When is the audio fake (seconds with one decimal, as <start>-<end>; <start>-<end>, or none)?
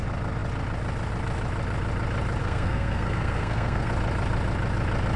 2.4-3.9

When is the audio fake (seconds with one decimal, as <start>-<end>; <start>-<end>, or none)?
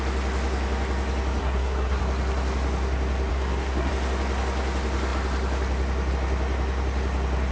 1.4-2.0; 3.3-3.9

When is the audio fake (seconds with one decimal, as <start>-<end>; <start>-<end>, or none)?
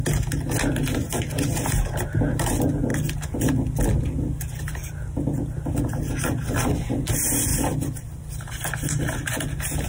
7.5-8.5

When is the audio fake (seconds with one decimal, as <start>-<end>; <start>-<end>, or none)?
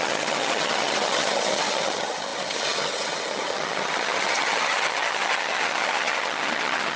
0.0-7.0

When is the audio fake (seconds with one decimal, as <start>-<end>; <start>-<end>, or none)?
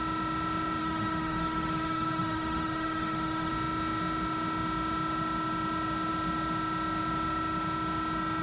0.8-3.5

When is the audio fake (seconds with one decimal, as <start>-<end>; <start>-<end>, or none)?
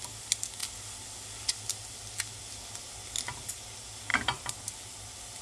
none